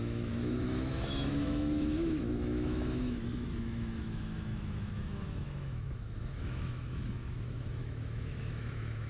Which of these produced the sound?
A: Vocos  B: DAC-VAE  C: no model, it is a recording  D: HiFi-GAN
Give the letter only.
B